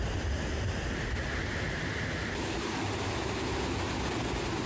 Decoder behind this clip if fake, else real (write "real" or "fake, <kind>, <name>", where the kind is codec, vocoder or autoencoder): real